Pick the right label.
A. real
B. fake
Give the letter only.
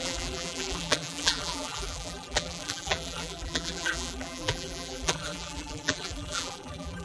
B